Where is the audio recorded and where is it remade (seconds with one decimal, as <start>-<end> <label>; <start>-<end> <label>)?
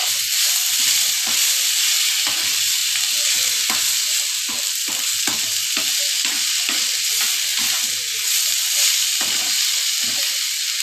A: 0.0-2.8 remade; 2.8-6.3 recorded; 6.3-7.5 remade; 7.5-8.5 recorded; 8.5-10.8 remade